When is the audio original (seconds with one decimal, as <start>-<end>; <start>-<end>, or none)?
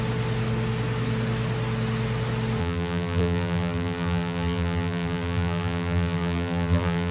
0.0-2.6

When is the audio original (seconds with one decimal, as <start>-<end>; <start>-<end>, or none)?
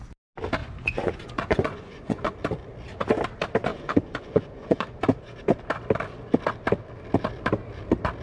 0.0-0.6; 2.3-3.7; 5.0-8.2